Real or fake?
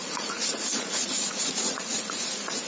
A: fake